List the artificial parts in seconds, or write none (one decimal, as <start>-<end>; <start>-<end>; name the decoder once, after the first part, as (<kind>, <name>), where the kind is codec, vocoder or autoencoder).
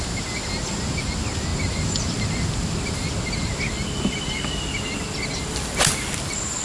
none